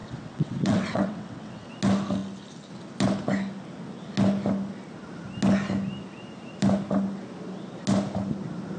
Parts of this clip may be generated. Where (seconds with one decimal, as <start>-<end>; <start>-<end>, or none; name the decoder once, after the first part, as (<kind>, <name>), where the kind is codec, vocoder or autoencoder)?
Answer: 0.0-1.7 (vocoder, WaveNeXt)